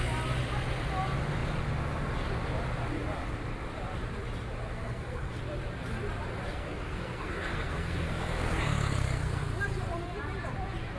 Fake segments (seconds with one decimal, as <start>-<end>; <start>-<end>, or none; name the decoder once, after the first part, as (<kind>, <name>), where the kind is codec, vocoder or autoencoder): 4.7-5.4 (codec, SNAC); 6.5-9.4